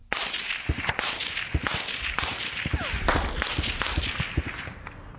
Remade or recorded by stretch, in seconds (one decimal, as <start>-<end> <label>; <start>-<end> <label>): 0.0-5.2 recorded